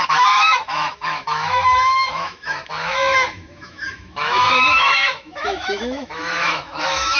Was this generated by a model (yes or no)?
yes